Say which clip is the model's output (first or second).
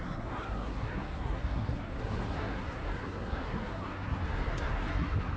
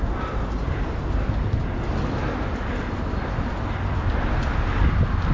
first